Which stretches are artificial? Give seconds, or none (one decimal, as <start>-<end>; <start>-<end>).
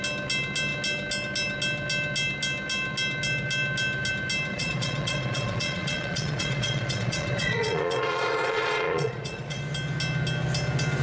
4.5-9.6